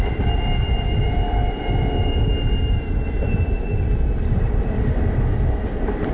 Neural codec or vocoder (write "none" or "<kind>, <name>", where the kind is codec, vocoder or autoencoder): none